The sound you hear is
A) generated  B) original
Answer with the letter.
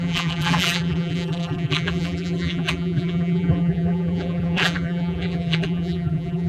A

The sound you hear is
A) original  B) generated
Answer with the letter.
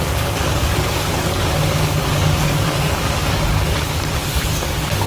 B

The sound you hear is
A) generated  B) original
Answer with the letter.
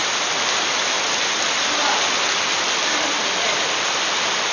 A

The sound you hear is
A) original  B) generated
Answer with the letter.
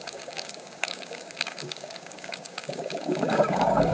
B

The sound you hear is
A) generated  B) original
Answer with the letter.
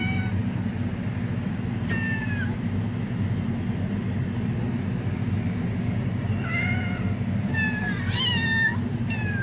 B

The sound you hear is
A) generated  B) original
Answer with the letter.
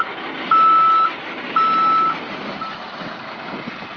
B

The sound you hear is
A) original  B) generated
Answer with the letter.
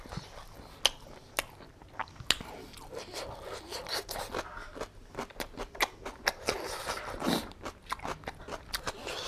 A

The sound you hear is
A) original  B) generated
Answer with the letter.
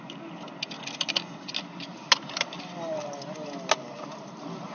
A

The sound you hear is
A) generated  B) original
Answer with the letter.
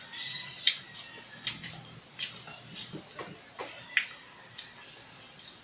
B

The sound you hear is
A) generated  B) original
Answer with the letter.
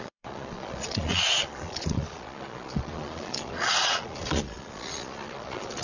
A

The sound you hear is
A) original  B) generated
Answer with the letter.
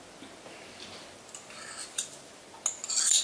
A